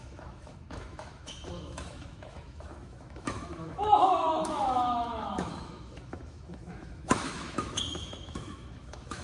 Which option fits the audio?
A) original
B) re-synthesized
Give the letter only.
B